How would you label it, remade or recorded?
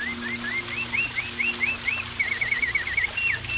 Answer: recorded